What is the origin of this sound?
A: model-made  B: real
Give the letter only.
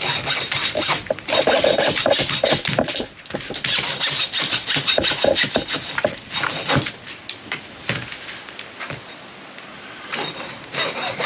B